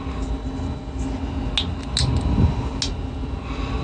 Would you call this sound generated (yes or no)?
no